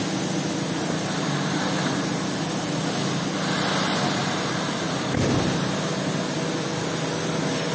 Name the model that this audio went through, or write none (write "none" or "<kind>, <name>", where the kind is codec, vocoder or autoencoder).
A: none